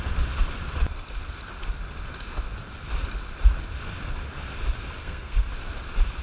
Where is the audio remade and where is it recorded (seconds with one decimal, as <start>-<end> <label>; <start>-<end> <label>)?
0.0-5.0 recorded; 5.0-5.5 remade; 5.5-6.2 recorded